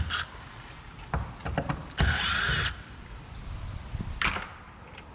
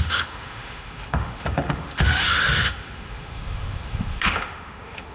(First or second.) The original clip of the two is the first